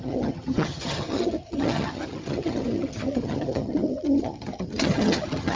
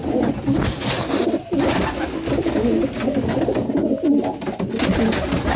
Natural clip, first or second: second